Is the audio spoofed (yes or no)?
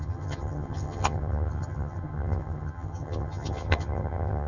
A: yes